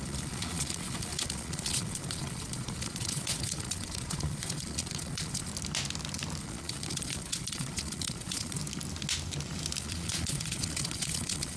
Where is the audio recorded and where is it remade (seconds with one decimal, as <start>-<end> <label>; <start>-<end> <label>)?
0.0-5.5 remade; 5.5-6.4 recorded; 6.4-8.6 remade; 8.6-9.8 recorded; 9.8-11.6 remade